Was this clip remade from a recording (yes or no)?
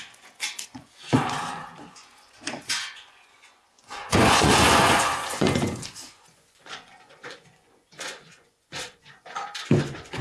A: yes